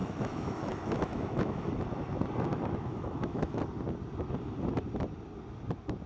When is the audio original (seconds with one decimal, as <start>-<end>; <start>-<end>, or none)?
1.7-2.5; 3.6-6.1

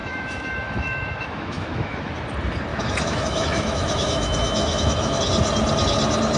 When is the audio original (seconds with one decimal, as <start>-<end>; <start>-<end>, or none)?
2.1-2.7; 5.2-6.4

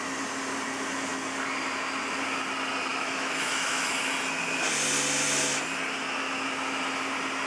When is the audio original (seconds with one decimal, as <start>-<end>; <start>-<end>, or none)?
0.0-2.9; 4.1-7.5

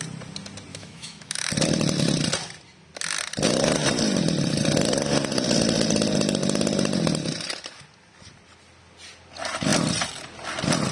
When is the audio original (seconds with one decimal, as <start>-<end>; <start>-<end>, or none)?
0.0-0.7; 1.5-10.9

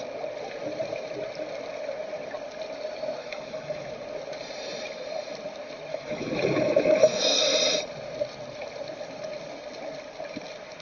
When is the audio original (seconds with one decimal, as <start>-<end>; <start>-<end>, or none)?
0.0-3.2; 3.9-5.9; 7.4-10.8